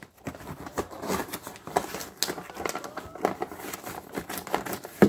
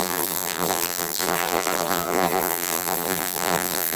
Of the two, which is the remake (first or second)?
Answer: second